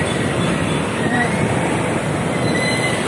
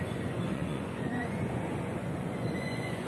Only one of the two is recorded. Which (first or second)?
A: first